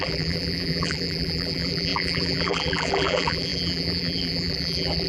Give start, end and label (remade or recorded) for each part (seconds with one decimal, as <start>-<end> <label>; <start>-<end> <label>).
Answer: 0.0-5.1 remade